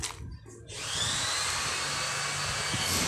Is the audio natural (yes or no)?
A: yes